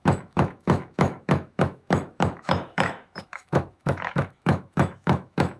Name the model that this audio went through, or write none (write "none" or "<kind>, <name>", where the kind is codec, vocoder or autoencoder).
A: autoencoder, DAC-VAE